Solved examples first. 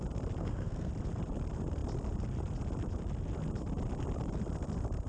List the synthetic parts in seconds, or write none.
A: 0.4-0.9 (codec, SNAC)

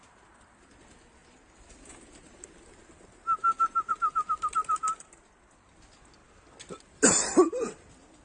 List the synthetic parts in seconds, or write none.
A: none

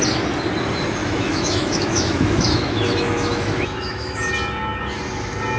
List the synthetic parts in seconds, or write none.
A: 1.0-4.3 (autoencoder, DAC-VAE)

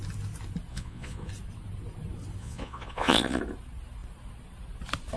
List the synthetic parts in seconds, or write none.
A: 0.7-1.3 (vocoder, Vocos); 2.4-3.4

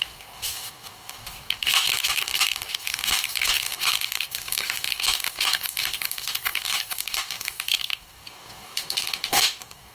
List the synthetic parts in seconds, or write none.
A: 0.0-9.9 (codec, DAC)